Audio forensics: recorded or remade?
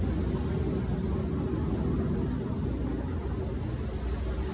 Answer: recorded